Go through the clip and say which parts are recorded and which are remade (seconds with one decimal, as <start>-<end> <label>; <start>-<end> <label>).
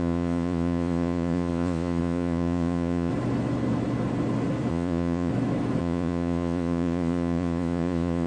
0.0-3.1 remade; 3.1-4.7 recorded; 4.7-5.3 remade; 5.3-5.8 recorded; 5.8-8.3 remade